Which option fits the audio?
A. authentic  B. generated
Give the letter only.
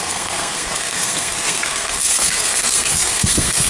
B